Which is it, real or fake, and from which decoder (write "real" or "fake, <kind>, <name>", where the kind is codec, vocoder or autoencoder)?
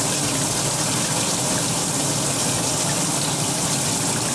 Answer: real